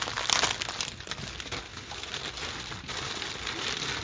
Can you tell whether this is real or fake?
real